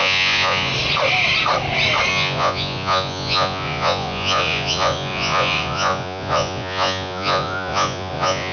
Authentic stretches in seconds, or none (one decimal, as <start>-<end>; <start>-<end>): 0.7-2.1